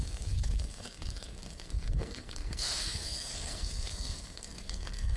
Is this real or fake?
fake